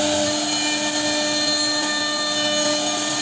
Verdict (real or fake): real